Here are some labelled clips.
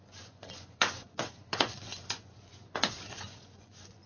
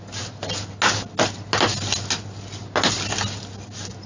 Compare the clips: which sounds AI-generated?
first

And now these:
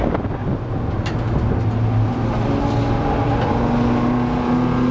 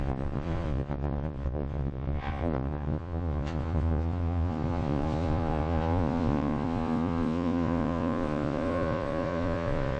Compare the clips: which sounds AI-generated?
second